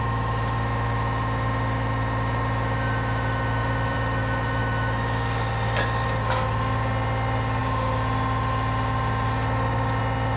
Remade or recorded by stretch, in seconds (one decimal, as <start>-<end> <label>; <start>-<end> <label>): 0.0-3.6 recorded; 3.6-4.6 remade; 4.6-10.4 recorded